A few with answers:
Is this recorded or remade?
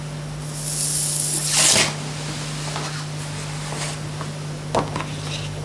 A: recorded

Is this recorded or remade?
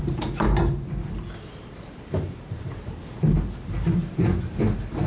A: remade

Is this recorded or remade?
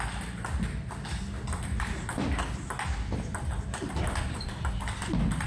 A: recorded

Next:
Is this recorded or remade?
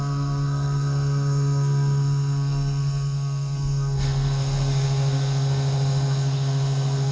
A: remade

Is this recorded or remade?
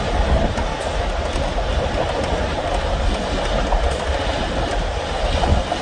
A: recorded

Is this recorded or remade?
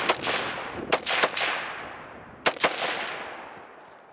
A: recorded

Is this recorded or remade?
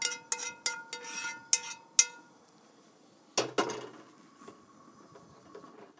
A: recorded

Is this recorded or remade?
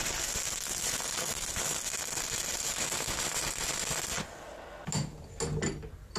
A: recorded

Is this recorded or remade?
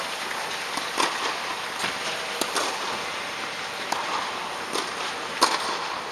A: recorded